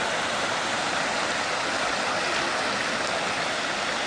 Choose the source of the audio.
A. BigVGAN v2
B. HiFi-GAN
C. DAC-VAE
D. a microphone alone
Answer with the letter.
D